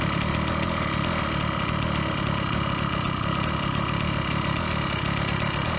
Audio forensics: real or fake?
real